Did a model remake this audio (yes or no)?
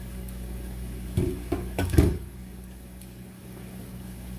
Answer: yes